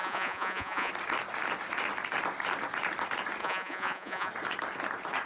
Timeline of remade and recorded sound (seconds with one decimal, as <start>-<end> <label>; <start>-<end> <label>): 0.0-0.9 remade; 0.9-3.4 recorded; 3.4-4.3 remade; 4.3-5.3 recorded